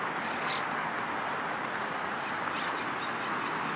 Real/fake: real